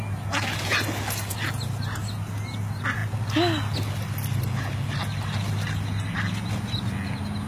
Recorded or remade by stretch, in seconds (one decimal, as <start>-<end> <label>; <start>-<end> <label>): 0.0-7.5 recorded